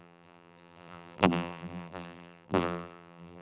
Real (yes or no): no